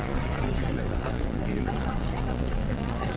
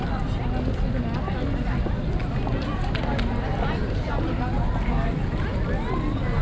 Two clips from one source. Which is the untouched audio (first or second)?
second